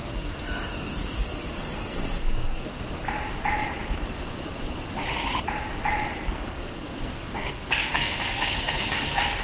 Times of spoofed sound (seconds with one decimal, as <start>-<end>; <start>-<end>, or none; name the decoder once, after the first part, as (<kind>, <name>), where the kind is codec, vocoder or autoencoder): 0.0-2.7 (codec, SNAC); 6.2-9.4